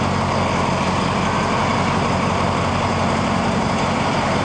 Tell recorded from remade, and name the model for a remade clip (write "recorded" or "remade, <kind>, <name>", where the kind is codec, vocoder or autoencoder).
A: recorded